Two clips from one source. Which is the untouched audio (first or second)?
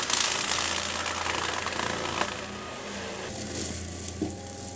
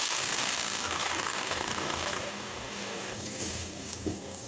first